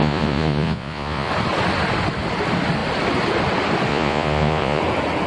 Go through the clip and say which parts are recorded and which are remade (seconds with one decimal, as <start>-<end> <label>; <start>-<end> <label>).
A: 0.0-1.3 remade; 1.3-3.9 recorded; 3.9-4.8 remade; 4.8-5.3 recorded